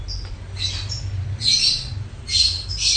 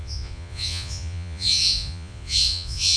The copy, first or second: second